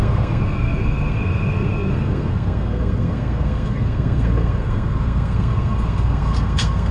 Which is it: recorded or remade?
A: remade